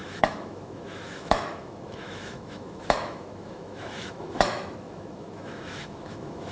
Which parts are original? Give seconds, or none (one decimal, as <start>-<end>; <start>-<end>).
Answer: none